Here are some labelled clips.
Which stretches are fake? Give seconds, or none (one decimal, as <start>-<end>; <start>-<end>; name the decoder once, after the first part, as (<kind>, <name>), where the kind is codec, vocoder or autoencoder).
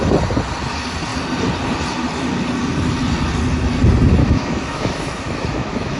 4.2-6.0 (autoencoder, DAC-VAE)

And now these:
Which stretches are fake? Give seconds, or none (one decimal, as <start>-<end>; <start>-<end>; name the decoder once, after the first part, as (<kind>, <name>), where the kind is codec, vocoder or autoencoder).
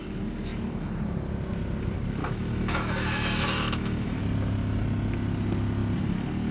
2.2-4.2 (autoencoder, DAC-VAE)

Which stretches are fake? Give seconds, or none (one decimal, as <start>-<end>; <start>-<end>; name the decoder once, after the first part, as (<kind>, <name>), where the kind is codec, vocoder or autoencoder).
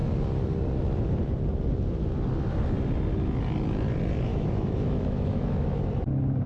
4.3-5.9 (autoencoder, DAC-VAE)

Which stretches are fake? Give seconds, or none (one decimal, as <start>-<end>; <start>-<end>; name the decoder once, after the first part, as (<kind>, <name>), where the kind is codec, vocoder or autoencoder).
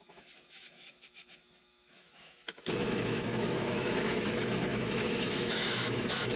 0.0-6.4 (autoencoder, DAC-VAE)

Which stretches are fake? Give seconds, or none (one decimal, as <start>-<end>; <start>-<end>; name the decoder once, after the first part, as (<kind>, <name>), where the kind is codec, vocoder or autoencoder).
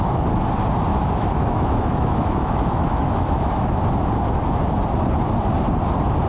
0.9-3.8 (autoencoder, DAC-VAE)